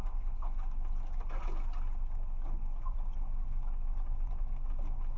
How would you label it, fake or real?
real